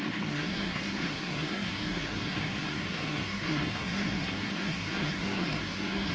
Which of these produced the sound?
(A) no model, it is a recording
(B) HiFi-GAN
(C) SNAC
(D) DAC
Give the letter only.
C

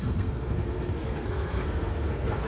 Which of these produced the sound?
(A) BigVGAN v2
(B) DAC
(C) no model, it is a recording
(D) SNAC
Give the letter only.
D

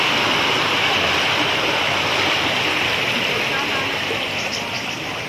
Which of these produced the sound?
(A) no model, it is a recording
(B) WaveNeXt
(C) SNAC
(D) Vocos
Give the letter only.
A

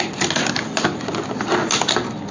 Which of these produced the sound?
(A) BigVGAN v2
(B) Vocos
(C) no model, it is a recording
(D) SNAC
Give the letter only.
C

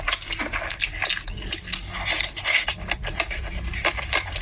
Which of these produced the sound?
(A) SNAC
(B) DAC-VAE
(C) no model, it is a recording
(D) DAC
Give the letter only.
C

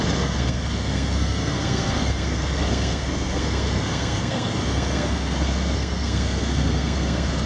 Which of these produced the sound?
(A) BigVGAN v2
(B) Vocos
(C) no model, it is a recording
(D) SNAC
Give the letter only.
D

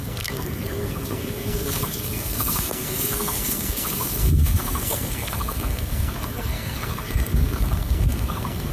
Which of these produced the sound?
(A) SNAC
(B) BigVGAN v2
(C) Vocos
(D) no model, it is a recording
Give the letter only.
A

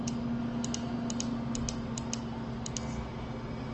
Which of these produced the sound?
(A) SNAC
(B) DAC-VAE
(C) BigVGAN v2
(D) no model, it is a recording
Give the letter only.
D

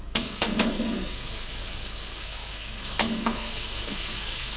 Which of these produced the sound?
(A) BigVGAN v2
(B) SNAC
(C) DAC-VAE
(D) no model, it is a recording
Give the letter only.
B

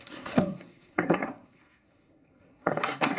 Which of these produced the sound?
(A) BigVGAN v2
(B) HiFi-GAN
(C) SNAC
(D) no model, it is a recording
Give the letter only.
C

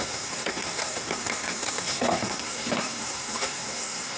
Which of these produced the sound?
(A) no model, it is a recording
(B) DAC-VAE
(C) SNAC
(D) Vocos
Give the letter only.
C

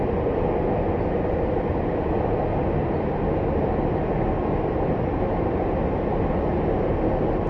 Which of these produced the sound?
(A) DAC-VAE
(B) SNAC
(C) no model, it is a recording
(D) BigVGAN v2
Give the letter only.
C